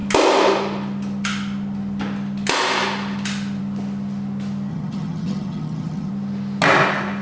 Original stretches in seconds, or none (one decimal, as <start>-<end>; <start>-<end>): 0.0-4.7; 6.1-7.2